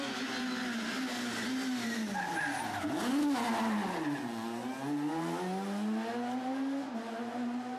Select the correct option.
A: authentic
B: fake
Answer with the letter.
A